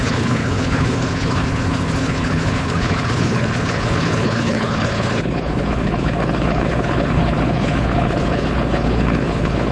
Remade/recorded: remade